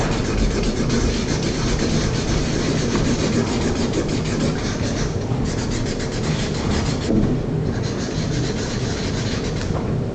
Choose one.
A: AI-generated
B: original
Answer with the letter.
B